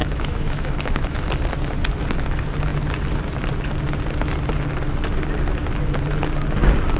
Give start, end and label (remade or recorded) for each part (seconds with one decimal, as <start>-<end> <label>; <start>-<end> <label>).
0.0-1.3 remade; 1.3-7.0 recorded